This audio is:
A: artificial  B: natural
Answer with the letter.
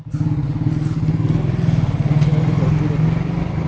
B